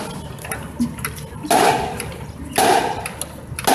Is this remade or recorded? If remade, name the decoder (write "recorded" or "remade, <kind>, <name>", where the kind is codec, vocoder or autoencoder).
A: recorded